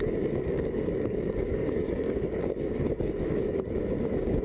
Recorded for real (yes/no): no